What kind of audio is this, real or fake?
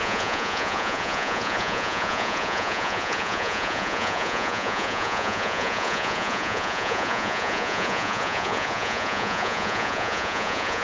fake